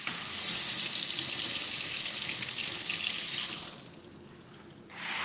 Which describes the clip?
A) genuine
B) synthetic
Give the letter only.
A